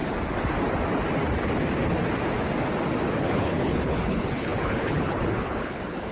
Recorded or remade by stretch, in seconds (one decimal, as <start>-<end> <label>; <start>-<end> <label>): 0.0-3.2 recorded; 3.2-6.1 remade